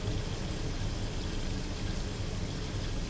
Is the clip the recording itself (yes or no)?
yes